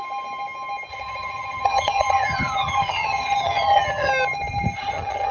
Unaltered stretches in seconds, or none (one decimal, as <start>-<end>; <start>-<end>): 0.0-0.9; 4.1-4.7